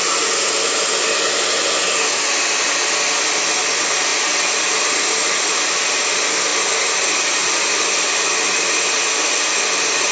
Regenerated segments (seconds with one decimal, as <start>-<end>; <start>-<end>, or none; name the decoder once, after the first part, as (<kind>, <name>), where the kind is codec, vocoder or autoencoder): none